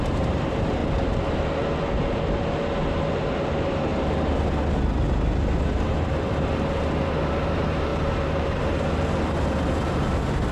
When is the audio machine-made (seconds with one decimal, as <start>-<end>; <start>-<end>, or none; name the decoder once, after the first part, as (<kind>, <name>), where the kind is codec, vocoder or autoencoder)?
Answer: 0.0-0.8 (vocoder, BigVGAN v2); 3.2-3.9; 5.7-10.5